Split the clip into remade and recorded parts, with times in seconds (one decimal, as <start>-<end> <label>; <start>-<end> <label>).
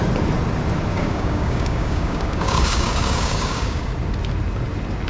0.0-0.9 recorded; 0.9-3.9 remade; 3.9-5.1 recorded